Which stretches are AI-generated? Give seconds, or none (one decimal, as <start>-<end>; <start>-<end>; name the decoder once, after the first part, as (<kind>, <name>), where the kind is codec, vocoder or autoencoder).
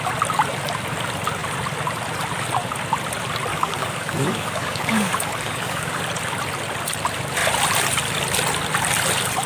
3.5-6.0 (codec, DAC)